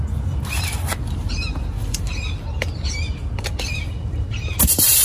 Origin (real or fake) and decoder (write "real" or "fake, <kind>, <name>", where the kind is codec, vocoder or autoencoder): real